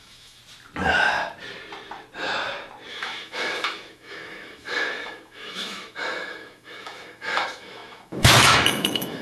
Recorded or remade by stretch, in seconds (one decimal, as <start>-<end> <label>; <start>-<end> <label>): 0.0-0.4 remade; 0.4-2.9 recorded; 2.9-9.2 remade